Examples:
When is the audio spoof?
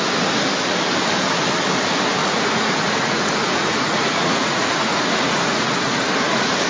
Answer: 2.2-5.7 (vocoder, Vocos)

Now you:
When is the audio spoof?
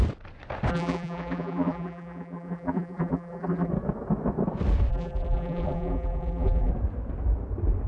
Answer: 0.7-3.7 (vocoder, BigVGAN v2); 4.9-6.7